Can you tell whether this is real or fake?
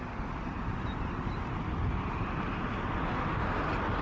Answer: real